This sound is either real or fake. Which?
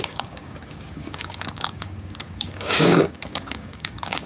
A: fake